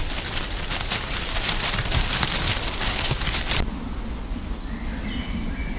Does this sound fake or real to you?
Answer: fake